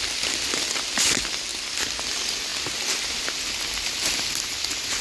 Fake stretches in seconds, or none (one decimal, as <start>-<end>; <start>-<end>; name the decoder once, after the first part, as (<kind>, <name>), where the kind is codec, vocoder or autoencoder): none